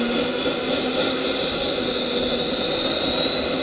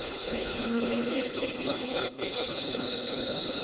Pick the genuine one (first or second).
first